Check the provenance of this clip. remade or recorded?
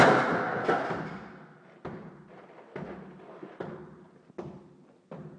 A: recorded